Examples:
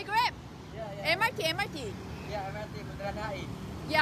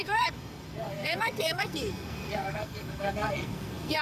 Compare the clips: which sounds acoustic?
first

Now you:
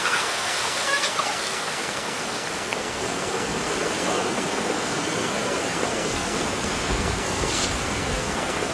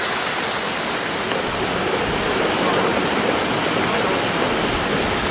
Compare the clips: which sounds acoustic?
second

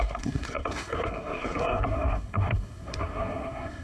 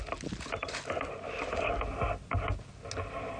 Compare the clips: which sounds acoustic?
second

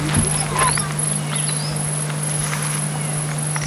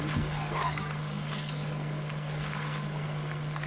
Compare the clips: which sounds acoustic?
first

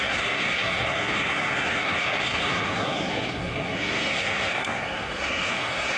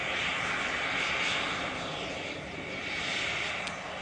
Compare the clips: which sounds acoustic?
second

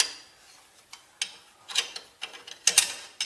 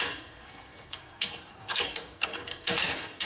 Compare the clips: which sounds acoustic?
first